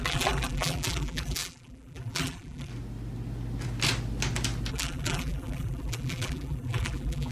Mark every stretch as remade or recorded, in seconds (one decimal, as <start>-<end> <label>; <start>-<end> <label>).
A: 0.0-2.7 remade; 2.7-4.7 recorded; 4.7-7.3 remade